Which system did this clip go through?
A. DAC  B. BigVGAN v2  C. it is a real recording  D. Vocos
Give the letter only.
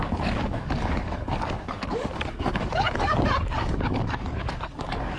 A